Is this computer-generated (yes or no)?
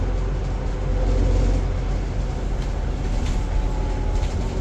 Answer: no